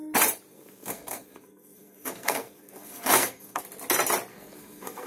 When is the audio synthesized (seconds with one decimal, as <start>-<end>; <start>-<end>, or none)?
0.5-3.6; 4.3-5.1